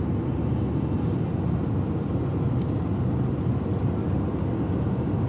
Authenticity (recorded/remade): recorded